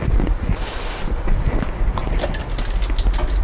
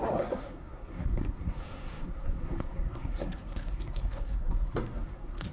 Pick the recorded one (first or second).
first